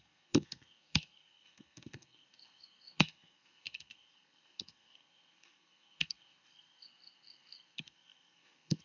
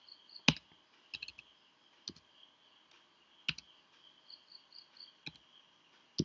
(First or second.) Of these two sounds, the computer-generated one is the first